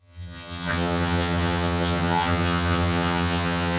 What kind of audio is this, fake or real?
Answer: fake